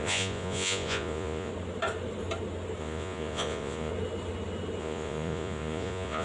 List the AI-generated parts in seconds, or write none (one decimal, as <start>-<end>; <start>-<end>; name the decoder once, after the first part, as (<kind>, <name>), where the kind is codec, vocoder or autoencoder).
0.0-1.5 (vocoder, Vocos); 2.8-3.9; 4.8-6.2